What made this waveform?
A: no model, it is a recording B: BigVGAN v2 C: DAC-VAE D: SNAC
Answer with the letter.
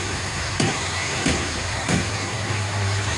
D